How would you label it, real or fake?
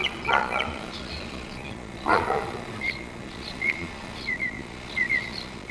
fake